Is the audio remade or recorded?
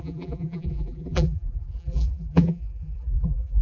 remade